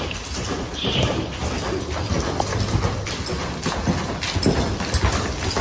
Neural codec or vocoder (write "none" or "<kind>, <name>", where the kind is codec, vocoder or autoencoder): none